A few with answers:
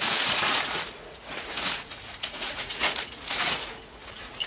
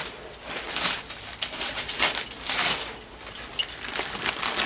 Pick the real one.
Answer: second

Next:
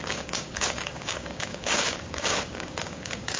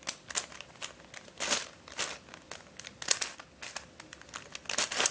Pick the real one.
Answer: second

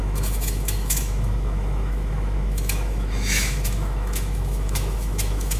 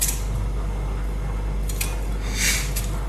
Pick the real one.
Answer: second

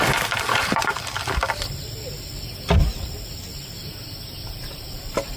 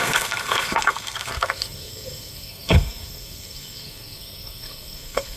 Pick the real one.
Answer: first